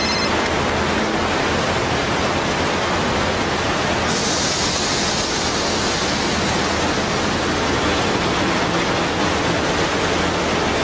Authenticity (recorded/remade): recorded